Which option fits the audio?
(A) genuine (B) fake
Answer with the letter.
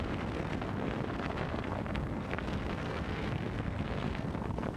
B